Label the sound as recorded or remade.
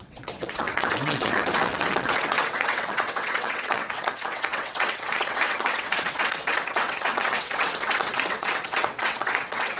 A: remade